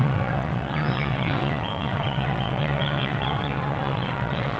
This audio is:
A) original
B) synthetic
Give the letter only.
B